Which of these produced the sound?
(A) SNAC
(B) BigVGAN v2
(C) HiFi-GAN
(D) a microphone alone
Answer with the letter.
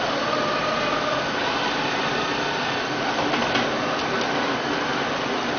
D